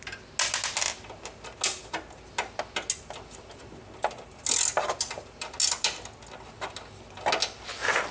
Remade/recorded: recorded